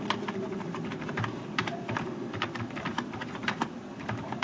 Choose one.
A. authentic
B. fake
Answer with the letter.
A